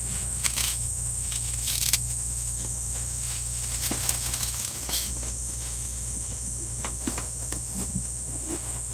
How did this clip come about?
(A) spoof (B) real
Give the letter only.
A